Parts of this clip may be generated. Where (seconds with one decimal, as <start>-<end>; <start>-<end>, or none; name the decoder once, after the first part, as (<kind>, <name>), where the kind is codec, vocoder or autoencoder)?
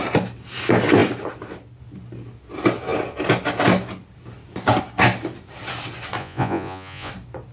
6.2-7.1 (vocoder, Vocos)